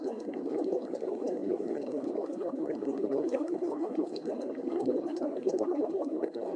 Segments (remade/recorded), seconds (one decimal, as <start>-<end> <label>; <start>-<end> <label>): 0.0-6.6 remade